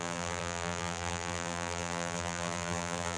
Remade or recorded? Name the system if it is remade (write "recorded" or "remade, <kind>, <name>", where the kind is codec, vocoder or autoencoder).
remade, vocoder, BigVGAN v2